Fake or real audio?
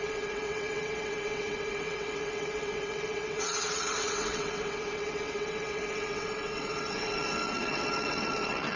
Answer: fake